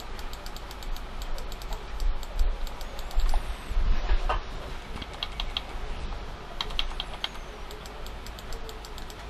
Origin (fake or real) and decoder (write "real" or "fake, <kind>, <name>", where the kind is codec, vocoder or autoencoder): real